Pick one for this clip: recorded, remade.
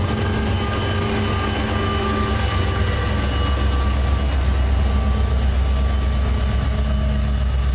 recorded